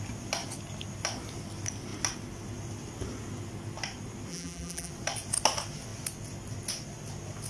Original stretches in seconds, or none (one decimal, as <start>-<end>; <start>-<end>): 0.0-4.3; 4.9-7.5